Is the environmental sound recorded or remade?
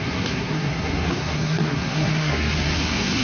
remade